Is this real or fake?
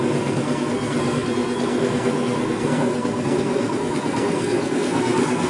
fake